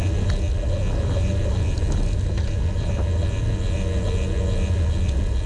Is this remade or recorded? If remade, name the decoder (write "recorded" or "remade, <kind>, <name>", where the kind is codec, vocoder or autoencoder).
recorded